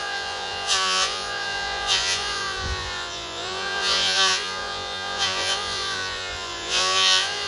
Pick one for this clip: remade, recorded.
remade